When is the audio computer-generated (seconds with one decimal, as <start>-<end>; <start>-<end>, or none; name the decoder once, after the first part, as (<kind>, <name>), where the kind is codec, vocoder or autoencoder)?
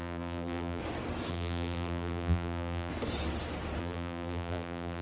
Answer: 0.0-0.8 (vocoder, BigVGAN v2); 1.3-2.9; 3.8-5.0